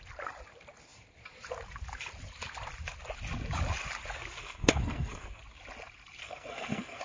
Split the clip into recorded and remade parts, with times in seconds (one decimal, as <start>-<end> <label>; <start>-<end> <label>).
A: 0.0-4.4 recorded; 4.4-5.4 remade; 5.4-6.2 recorded; 6.2-7.0 remade